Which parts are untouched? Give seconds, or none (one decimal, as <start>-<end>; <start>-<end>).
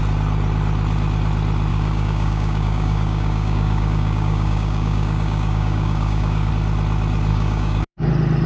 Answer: 0.0-1.7; 6.5-7.3; 8.1-8.5